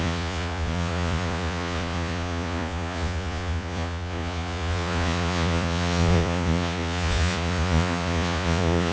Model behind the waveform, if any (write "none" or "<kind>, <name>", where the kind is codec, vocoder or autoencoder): vocoder, Vocos